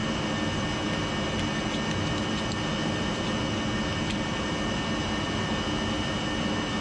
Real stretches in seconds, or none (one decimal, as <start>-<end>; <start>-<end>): 0.0-6.8